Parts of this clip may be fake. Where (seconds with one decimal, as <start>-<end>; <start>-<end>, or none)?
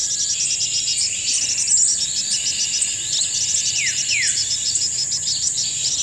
none